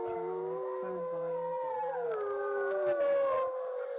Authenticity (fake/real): real